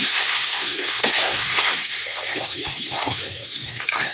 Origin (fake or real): fake